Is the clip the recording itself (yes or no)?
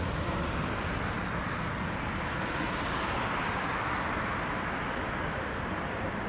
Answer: yes